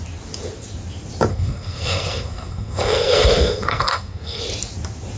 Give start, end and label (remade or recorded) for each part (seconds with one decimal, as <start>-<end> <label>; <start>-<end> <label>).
0.0-1.3 recorded; 1.3-4.4 remade; 4.4-5.2 recorded